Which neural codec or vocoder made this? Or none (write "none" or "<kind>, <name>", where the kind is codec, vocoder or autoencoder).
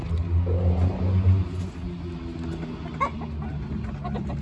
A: none